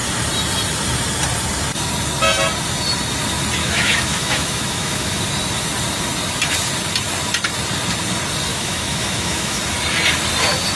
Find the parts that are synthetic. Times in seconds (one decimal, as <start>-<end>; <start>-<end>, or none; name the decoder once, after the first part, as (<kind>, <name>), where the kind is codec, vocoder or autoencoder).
3.6-5.2 (autoencoder, DAC-VAE); 8.5-9.6

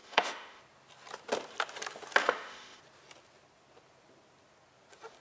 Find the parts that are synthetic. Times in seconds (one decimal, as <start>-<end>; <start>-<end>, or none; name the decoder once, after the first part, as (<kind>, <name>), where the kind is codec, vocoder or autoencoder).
0.0-0.6 (autoencoder, DAC-VAE); 2.2-2.8

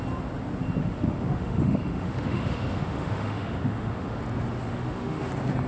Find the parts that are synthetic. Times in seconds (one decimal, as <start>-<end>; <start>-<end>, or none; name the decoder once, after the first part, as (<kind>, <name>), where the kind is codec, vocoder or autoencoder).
0.8-4.2 (autoencoder, DAC-VAE); 4.7-5.3

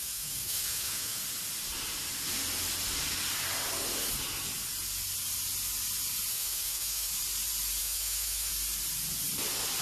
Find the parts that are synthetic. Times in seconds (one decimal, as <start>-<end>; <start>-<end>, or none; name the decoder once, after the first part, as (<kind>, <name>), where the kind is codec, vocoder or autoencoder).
0.0-1.2 (autoencoder, DAC-VAE); 6.3-7.1; 7.8-8.5